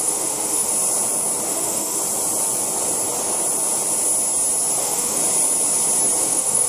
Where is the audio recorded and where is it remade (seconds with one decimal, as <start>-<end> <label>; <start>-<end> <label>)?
0.0-0.7 remade; 0.7-1.5 recorded; 1.5-2.0 remade; 2.0-4.8 recorded; 4.8-5.2 remade; 5.2-6.2 recorded; 6.2-6.7 remade